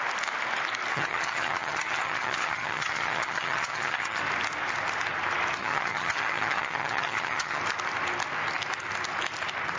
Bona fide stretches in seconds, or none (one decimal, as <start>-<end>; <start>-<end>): 0.0-0.9; 4.2-5.6; 7.6-9.8